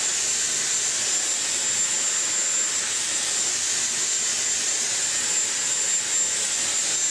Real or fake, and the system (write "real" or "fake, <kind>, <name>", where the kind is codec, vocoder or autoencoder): real